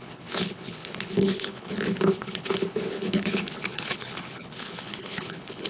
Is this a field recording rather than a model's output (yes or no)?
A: no